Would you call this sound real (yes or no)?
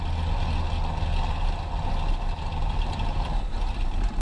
yes